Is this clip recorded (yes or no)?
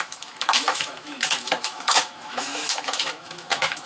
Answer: no